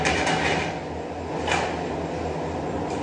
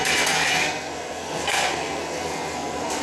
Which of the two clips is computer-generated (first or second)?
second